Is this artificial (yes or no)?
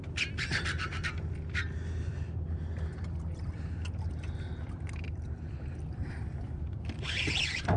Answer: no